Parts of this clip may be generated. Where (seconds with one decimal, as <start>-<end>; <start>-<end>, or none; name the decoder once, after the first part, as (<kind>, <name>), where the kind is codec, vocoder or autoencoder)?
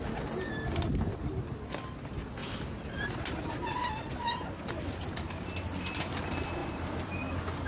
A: 2.4-4.0 (vocoder, BigVGAN v2); 6.6-7.2